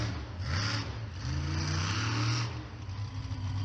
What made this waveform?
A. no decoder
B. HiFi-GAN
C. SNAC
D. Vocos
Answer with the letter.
A